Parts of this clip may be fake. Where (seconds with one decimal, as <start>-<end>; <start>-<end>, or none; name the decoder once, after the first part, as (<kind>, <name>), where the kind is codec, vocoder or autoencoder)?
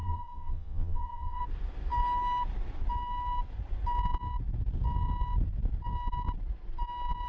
0.0-1.4 (vocoder, Vocos)